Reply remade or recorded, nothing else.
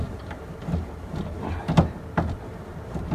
recorded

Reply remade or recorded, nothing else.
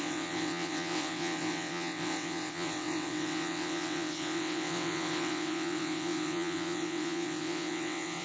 remade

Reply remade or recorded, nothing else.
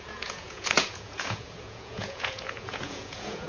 remade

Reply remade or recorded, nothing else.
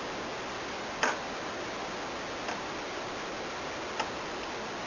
recorded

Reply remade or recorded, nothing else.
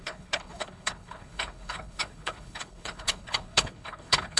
remade